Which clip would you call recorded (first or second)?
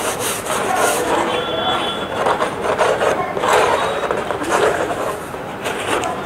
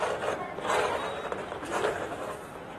second